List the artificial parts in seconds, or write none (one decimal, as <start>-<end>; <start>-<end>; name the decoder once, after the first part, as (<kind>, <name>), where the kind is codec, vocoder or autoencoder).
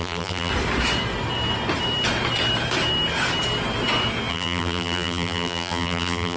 0.0-0.5 (vocoder, BigVGAN v2); 4.3-6.4